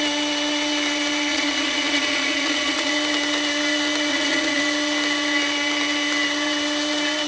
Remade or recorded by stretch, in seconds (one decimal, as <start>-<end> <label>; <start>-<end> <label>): 0.0-1.3 recorded; 1.3-2.9 remade; 2.9-4.1 recorded; 4.1-4.6 remade; 4.6-7.3 recorded